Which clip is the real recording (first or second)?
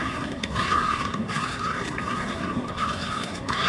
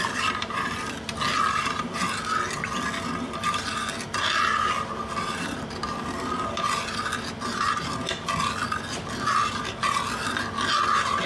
second